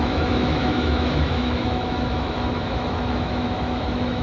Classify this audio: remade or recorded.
remade